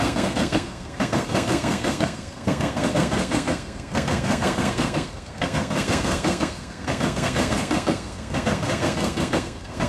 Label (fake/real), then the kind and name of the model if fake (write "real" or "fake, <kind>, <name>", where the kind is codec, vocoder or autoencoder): fake, codec, SNAC